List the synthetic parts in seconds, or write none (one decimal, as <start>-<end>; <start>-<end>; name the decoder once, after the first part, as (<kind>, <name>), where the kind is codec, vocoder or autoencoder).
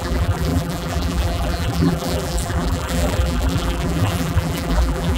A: 0.0-5.2 (vocoder, BigVGAN v2)